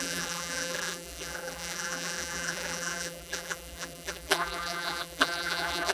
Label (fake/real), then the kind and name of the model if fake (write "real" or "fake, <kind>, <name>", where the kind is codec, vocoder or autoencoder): fake, vocoder, BigVGAN v2